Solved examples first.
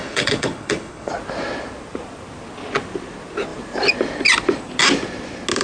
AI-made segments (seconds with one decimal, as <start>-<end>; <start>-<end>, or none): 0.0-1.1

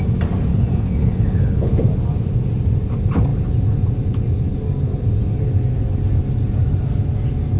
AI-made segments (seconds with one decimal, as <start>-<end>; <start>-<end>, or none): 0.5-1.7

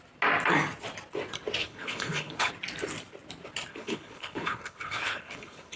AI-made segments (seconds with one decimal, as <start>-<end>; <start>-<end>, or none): 1.6-2.5; 3.7-5.8

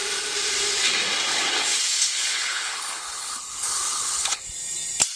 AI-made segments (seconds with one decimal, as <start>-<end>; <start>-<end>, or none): 1.3-4.4